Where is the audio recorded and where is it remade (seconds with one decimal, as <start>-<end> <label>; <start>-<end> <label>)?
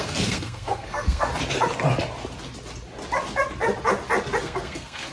0.0-1.3 remade; 1.3-4.4 recorded; 4.4-5.1 remade